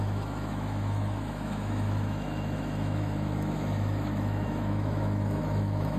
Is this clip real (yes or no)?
no